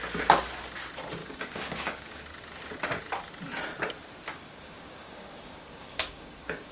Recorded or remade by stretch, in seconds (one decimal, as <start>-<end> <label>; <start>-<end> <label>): 0.0-1.2 recorded; 1.2-2.2 remade; 2.2-4.3 recorded; 4.3-6.7 remade